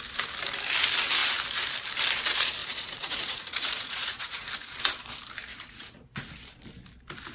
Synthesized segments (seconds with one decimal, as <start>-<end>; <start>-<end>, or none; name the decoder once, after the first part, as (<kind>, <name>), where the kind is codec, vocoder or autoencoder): 2.6-4.7 (vocoder, Vocos); 5.5-6.3